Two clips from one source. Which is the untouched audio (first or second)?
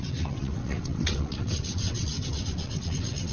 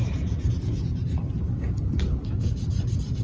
second